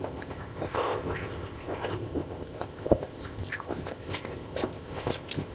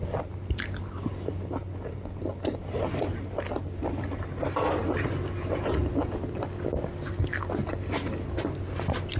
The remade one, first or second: first